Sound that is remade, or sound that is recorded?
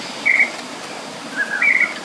recorded